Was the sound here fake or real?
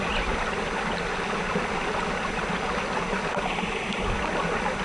real